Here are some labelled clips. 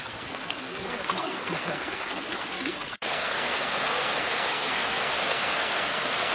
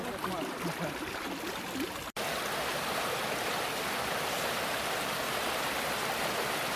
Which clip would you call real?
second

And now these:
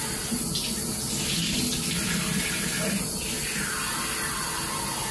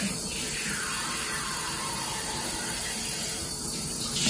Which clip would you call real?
first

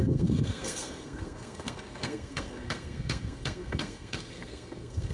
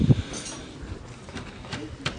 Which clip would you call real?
second